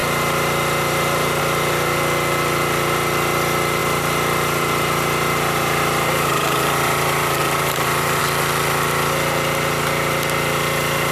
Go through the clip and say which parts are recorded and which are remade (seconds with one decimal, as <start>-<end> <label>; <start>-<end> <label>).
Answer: 0.0-1.4 remade; 1.4-3.8 recorded; 3.8-8.2 remade; 8.2-11.1 recorded